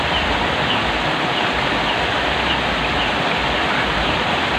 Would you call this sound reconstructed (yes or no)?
no